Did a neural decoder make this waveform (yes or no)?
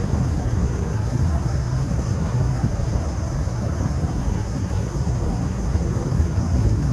yes